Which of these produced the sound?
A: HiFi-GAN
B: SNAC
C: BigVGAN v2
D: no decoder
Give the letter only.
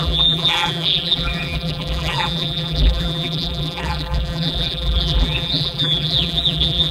C